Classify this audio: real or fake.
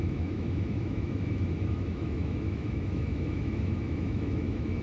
fake